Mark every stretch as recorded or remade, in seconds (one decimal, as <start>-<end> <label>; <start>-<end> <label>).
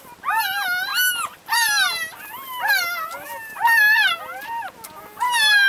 0.0-5.7 recorded